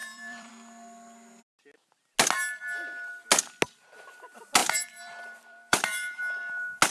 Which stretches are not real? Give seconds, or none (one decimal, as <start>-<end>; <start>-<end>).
0.0-0.5; 4.6-6.2